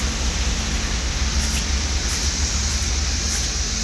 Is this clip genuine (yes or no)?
yes